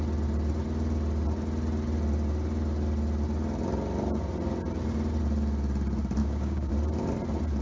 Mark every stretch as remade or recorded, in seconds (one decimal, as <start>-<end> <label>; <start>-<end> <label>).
0.0-6.2 recorded; 6.2-6.7 remade; 6.7-7.6 recorded